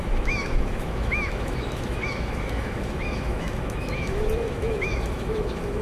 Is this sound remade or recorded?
remade